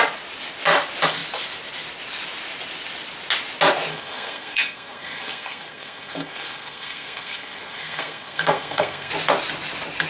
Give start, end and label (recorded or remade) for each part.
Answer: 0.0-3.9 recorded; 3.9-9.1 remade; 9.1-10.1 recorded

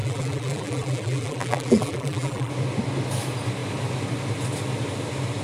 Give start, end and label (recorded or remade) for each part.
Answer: 0.0-2.5 remade; 2.5-5.4 recorded

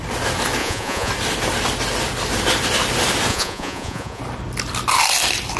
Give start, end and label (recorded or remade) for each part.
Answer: 0.0-0.6 recorded; 0.6-1.1 remade; 1.1-3.3 recorded; 3.3-4.2 remade; 4.2-5.6 recorded

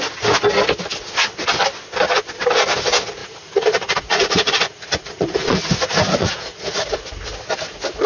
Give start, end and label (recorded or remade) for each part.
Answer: 0.0-3.2 recorded; 3.2-7.0 remade; 7.0-8.1 recorded

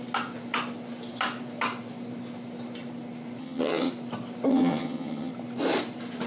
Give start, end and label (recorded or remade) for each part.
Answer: 0.0-3.4 recorded; 3.4-3.9 remade; 3.9-4.5 recorded; 4.5-5.3 remade; 5.3-6.3 recorded

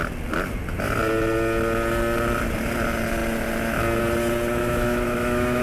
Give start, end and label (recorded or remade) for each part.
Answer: 0.0-4.6 recorded; 4.6-5.6 remade

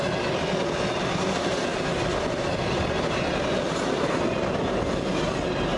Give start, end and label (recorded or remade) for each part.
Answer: 0.0-5.8 recorded

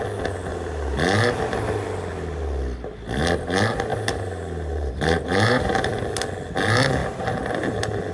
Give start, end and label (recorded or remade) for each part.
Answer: 0.0-0.5 recorded; 0.5-1.0 remade; 1.0-3.9 recorded; 3.9-6.0 remade; 6.0-7.0 recorded; 7.0-8.1 remade